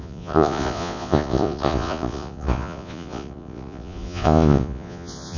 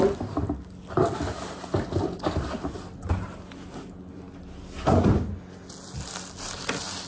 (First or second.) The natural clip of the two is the second